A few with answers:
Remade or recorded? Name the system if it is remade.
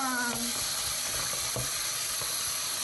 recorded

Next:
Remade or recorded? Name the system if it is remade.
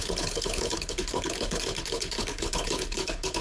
remade, codec, HILCodec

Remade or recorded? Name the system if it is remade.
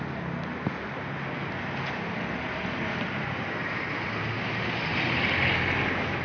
recorded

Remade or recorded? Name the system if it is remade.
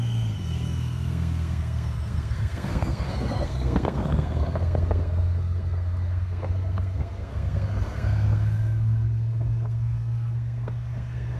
remade, codec, SNAC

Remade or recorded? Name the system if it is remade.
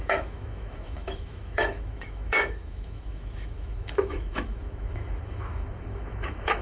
remade, autoencoder, DAC-VAE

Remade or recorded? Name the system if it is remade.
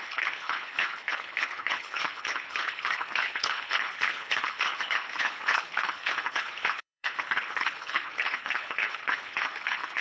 remade, codec, HILCodec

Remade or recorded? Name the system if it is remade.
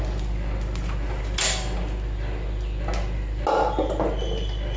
recorded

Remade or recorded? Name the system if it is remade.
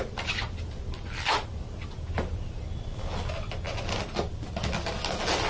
recorded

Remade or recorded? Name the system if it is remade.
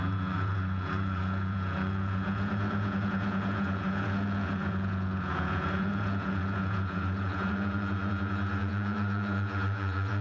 remade, vocoder, Vocos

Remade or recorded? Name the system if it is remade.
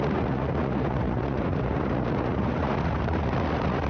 remade, vocoder, Vocos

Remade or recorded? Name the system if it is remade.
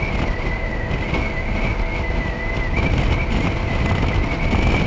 recorded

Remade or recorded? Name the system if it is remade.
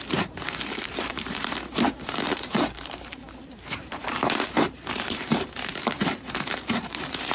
remade, vocoder, BigVGAN v2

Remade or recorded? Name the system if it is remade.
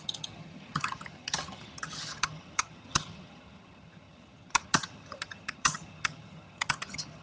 remade, vocoder, HiFi-GAN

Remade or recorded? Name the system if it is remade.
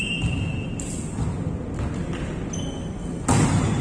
recorded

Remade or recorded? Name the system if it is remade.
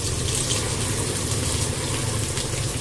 recorded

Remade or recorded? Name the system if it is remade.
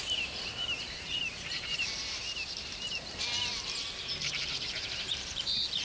remade, vocoder, BigVGAN v2